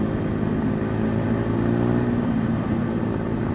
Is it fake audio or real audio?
real